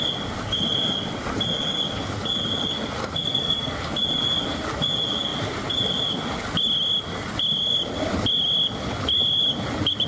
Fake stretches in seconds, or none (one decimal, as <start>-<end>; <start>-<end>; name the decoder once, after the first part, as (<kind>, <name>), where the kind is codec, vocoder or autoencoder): 3.0-3.8 (codec, SNAC)